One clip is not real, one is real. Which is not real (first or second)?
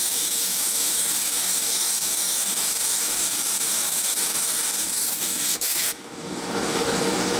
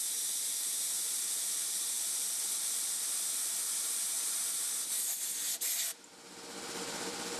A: first